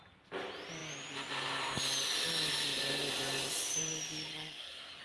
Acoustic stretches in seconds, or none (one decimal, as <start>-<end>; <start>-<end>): 0.0-4.3